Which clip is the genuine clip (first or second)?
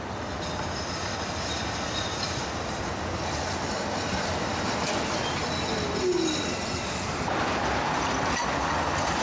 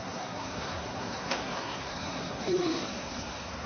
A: first